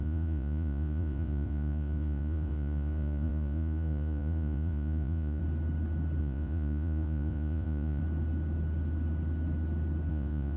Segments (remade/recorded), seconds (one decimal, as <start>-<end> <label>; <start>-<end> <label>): 0.0-5.4 remade; 5.4-6.2 recorded; 6.2-8.0 remade; 8.0-10.1 recorded; 10.1-10.6 remade